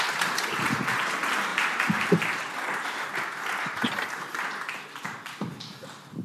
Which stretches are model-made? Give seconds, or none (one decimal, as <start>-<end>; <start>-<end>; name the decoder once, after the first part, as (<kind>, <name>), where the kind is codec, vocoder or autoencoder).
none